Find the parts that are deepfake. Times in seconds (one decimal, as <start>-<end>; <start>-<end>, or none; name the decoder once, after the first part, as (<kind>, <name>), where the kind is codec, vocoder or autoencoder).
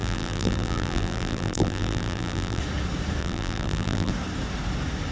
0.0-2.6 (vocoder, BigVGAN v2); 3.2-4.1